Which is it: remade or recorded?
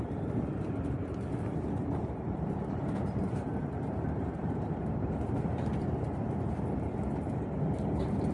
remade